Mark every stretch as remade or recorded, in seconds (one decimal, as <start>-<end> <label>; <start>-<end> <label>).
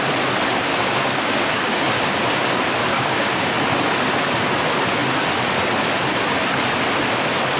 0.0-0.7 recorded; 0.7-2.0 remade; 2.0-2.9 recorded; 2.9-3.5 remade; 3.5-7.6 recorded